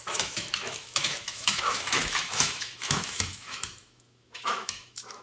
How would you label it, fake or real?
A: fake